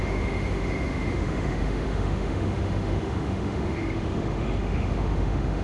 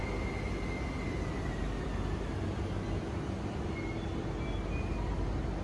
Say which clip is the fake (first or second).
first